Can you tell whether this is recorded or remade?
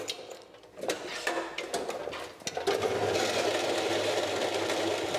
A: recorded